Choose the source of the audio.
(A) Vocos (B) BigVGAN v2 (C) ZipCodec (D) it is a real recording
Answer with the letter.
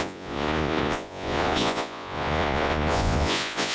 A